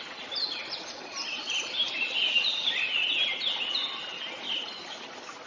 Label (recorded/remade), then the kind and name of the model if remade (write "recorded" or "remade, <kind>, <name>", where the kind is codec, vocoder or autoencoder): recorded